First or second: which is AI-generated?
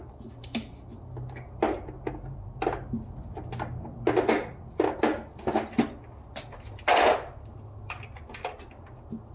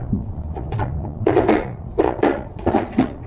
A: second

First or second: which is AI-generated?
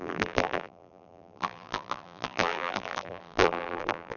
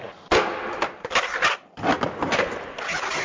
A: first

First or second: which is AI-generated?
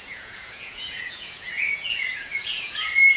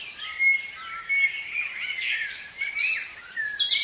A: first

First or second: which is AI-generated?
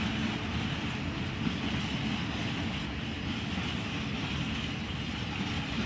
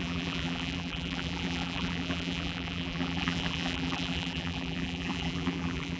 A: second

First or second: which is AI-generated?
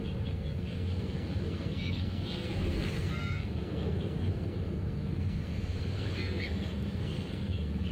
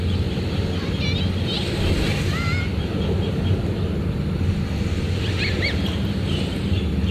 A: first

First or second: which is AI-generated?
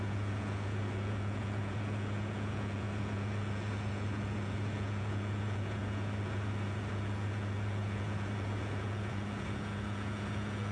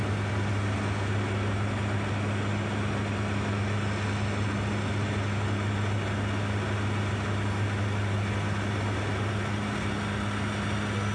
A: first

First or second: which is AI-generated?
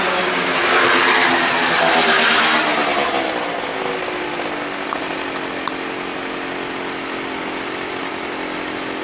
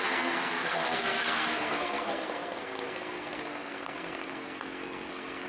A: second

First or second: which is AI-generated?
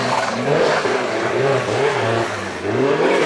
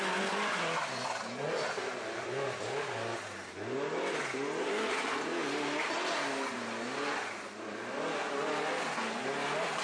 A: first